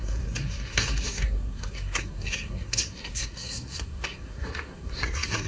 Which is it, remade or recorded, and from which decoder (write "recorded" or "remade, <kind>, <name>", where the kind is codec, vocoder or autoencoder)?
remade, codec, SNAC